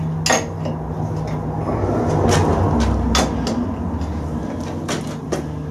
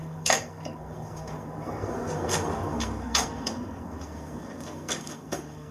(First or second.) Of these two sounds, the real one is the first